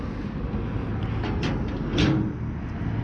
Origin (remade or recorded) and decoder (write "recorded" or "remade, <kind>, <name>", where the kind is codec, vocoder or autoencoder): recorded